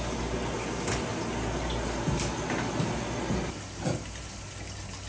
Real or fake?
real